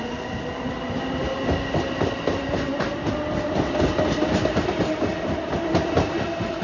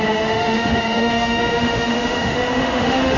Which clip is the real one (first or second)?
first